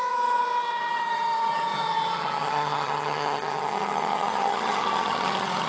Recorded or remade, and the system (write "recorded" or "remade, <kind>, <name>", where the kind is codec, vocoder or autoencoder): remade, vocoder, HiFi-GAN